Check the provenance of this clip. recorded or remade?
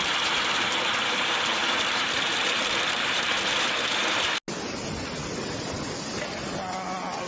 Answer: recorded